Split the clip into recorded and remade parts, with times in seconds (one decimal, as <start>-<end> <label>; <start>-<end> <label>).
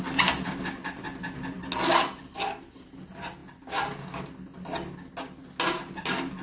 0.0-6.4 recorded